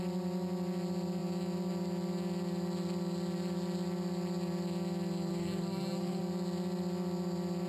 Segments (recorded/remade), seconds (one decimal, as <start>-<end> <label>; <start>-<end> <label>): 0.0-5.3 recorded; 5.3-6.2 remade; 6.2-7.7 recorded